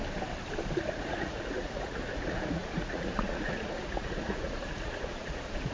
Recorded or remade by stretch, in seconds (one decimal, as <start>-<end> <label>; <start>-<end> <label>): 0.0-0.9 recorded; 0.9-5.7 remade